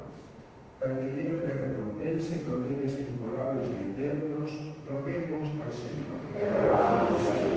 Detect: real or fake fake